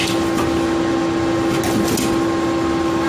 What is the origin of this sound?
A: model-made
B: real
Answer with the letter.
B